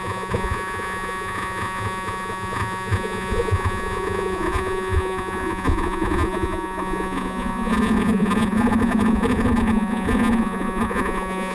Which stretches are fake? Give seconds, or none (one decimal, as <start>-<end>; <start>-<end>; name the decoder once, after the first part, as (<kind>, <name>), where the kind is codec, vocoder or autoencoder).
0.0-11.5 (vocoder, Vocos)